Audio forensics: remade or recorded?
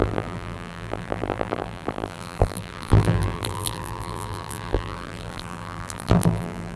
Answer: remade